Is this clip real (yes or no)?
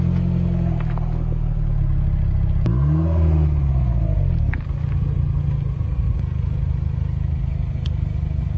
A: yes